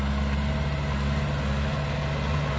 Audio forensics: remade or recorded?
recorded